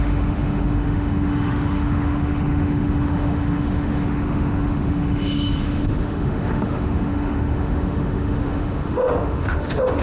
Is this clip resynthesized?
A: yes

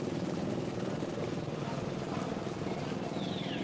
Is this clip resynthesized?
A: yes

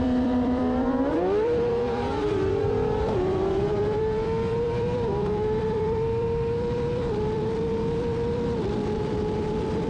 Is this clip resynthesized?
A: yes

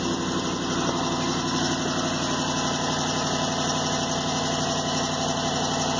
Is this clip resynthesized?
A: no